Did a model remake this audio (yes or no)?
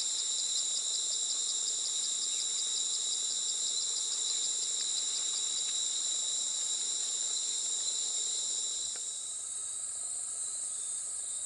yes